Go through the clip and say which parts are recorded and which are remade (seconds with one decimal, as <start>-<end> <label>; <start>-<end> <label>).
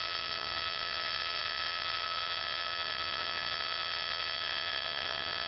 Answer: 0.0-5.5 remade